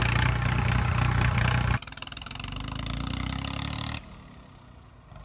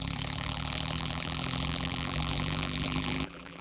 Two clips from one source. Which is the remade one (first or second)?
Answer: second